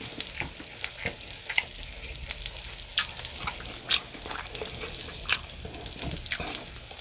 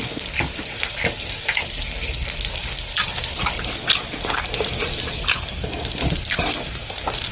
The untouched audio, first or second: first